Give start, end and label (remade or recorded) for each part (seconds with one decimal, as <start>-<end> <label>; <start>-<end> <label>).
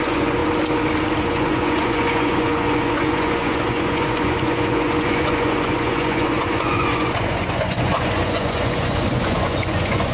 0.0-0.4 remade; 0.4-1.2 recorded; 1.2-10.1 remade